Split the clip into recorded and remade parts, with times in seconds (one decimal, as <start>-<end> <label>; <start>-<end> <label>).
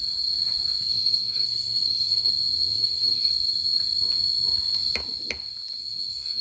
0.0-0.9 recorded; 0.9-2.3 remade; 2.3-2.7 recorded; 2.7-3.3 remade; 3.3-5.8 recorded; 5.8-6.4 remade